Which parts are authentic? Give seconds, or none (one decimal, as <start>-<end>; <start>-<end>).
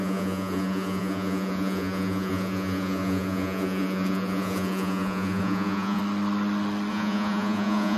6.0-6.9